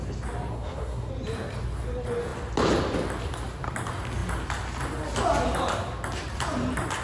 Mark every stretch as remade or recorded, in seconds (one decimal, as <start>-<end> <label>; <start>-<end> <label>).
0.0-0.5 recorded; 0.5-1.1 remade; 1.1-7.0 recorded